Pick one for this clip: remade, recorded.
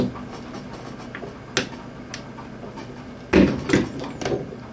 recorded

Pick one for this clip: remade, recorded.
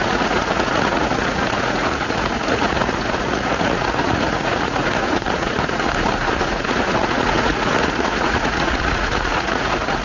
remade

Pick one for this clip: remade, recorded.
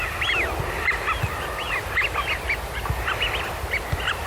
recorded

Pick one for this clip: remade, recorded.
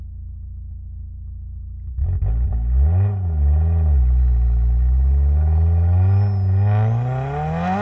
recorded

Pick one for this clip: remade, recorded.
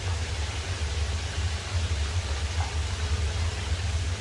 recorded